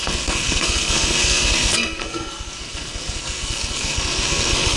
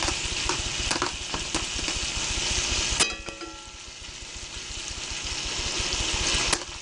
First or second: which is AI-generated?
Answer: first